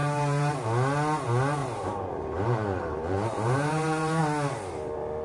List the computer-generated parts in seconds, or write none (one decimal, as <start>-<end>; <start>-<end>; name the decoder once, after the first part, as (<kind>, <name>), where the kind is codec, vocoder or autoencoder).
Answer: 0.0-0.5 (vocoder, BigVGAN v2); 1.6-4.2